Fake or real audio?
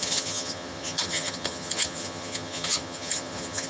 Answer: fake